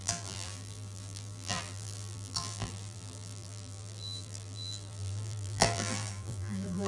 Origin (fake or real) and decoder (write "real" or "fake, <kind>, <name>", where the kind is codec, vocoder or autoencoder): fake, vocoder, BigVGAN v2